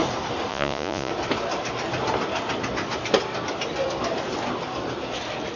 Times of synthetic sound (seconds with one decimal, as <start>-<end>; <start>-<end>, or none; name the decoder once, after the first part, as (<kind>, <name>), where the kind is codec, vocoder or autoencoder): 0.5-1.1 (vocoder, Vocos)